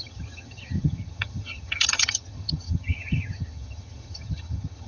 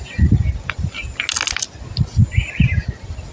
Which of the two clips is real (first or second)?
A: second